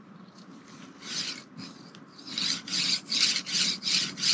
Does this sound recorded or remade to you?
recorded